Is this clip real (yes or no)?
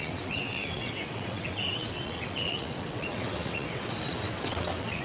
no